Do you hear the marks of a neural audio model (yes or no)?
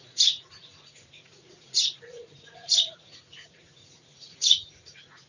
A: yes